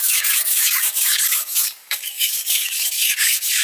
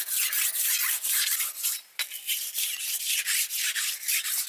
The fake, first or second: first